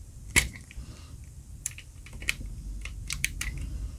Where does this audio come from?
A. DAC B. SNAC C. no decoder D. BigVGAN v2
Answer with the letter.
D